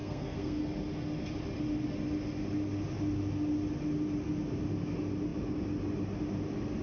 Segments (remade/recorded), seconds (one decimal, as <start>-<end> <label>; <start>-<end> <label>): 0.0-0.6 remade; 0.6-6.8 recorded

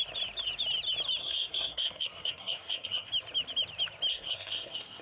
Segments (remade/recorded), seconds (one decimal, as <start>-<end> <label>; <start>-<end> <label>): 0.0-1.2 recorded; 1.2-3.1 remade; 3.1-4.1 recorded; 4.1-5.0 remade

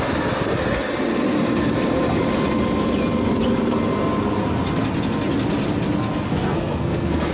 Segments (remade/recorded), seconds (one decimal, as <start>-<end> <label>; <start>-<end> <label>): 0.0-6.3 recorded; 6.3-7.3 remade

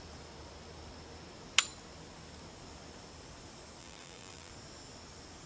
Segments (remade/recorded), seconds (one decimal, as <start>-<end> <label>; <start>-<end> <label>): 0.0-3.8 recorded; 3.8-4.5 remade; 4.5-5.5 recorded

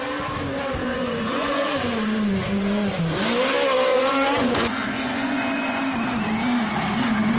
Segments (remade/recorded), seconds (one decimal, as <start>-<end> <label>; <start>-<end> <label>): 0.0-0.8 recorded; 0.8-3.0 remade; 3.0-3.9 recorded; 3.9-5.8 remade; 5.8-7.4 recorded

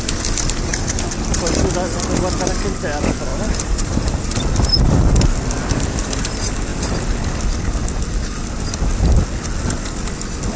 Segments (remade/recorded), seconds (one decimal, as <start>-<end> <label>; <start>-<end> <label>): 0.0-3.3 recorded; 3.3-4.1 remade; 4.1-10.6 recorded

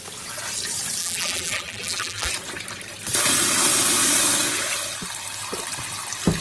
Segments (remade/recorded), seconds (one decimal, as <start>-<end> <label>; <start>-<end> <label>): 0.0-1.0 recorded; 1.0-2.3 remade; 2.3-6.4 recorded

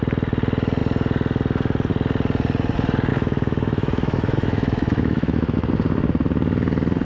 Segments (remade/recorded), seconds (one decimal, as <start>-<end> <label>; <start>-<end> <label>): 0.0-3.1 recorded; 3.1-5.7 remade; 5.7-7.0 recorded